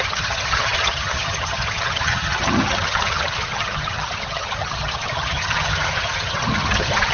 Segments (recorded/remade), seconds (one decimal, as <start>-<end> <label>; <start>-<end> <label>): 0.0-7.1 remade